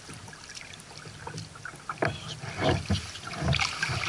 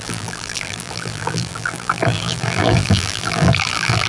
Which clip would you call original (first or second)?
first